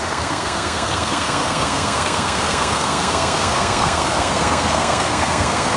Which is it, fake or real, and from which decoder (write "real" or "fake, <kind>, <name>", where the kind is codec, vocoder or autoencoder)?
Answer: fake, codec, SNAC